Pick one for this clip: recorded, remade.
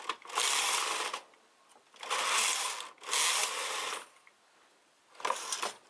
recorded